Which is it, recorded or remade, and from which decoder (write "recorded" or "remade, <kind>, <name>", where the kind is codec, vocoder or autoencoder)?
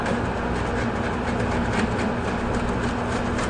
recorded